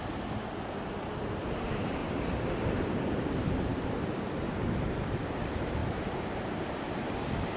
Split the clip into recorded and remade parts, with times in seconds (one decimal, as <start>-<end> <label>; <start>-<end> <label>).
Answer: 0.0-2.0 remade; 2.0-3.1 recorded; 3.1-7.6 remade